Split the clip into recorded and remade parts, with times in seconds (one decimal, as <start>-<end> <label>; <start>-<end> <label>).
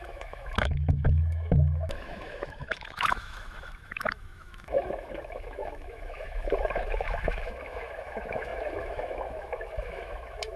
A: 0.0-10.6 remade